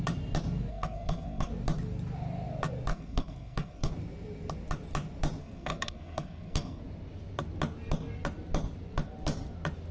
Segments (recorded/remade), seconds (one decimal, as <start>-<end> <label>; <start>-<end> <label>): 0.0-0.7 recorded; 0.7-1.5 remade; 1.5-2.9 recorded; 2.9-3.9 remade; 3.9-5.4 recorded; 5.4-6.8 remade; 6.8-9.9 recorded